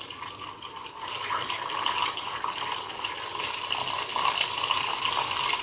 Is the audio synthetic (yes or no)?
no